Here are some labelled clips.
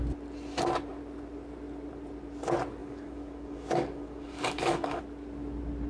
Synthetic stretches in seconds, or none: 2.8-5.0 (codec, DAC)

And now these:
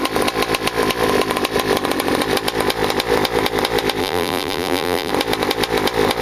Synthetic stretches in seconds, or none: 4.0-5.1 (vocoder, BigVGAN v2)